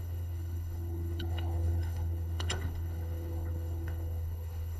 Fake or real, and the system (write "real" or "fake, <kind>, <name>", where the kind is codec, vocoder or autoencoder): fake, codec, HILCodec